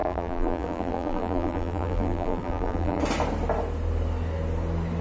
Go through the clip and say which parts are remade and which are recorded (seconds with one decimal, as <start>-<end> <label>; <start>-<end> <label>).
0.0-3.0 remade; 3.0-5.0 recorded